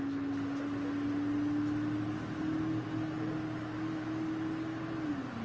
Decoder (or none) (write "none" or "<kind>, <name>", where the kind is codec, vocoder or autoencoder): none